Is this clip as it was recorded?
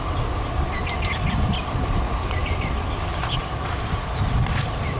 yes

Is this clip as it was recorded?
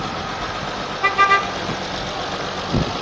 yes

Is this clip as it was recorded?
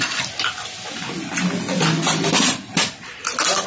yes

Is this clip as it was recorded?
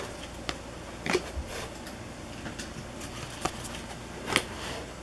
yes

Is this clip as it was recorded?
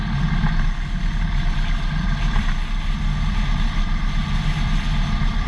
yes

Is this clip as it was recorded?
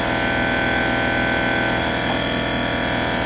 yes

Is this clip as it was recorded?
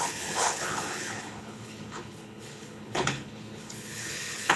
no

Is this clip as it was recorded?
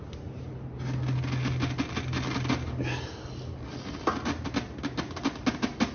yes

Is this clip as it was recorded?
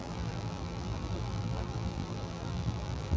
no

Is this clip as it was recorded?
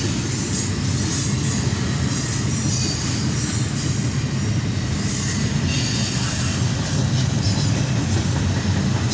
yes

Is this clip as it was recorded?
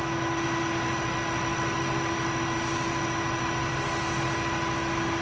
yes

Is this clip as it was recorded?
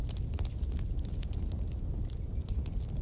yes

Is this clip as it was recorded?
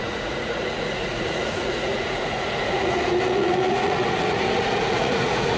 no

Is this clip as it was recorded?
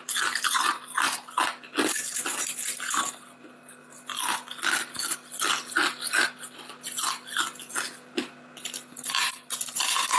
yes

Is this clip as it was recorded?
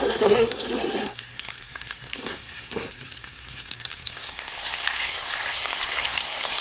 no